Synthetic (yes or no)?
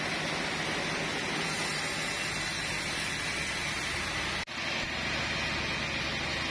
no